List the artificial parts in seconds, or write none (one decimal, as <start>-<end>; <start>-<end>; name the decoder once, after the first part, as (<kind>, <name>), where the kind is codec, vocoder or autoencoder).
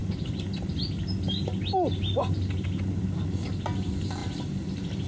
none